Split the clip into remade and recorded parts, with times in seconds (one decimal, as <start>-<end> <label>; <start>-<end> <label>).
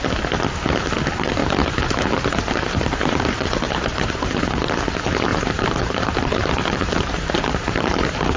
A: 0.0-1.4 recorded; 1.4-4.7 remade; 4.7-5.3 recorded; 5.3-8.4 remade